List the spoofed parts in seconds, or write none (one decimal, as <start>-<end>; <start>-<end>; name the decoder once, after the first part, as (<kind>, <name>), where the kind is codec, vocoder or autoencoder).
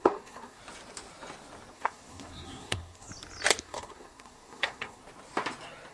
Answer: 0.0-0.6 (codec, SNAC); 1.7-3.1; 3.6-5.0